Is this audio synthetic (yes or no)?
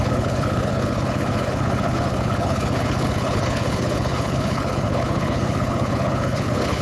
yes